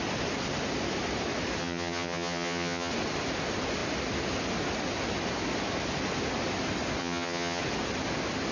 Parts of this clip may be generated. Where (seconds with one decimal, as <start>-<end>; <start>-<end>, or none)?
1.6-2.9; 7.0-7.6